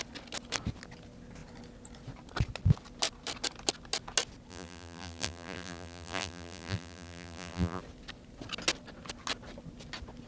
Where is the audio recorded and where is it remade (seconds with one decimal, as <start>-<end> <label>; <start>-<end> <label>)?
0.0-4.5 recorded; 4.5-7.8 remade; 7.8-10.3 recorded